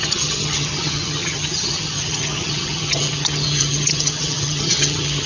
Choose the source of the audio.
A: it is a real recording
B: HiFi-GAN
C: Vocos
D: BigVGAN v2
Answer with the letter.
B